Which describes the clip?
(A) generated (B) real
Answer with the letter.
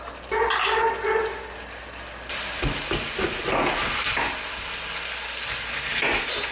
B